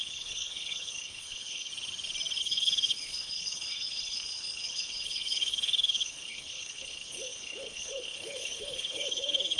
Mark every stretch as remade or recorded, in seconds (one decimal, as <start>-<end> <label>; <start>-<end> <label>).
0.0-1.7 remade; 1.7-2.4 recorded; 2.4-9.6 remade